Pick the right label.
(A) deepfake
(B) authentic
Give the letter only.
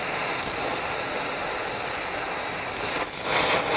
B